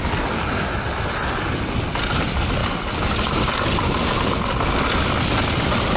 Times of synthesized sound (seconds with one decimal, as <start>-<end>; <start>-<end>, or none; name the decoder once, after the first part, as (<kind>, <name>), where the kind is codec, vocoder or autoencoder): none